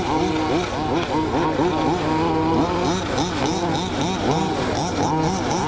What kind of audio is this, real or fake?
real